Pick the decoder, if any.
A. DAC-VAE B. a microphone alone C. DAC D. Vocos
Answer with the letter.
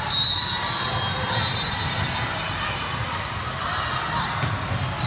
B